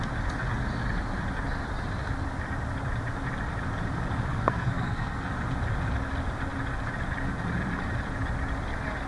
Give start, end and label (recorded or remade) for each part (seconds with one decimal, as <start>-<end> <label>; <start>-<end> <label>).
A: 0.0-4.3 recorded; 4.3-5.3 remade; 5.3-9.1 recorded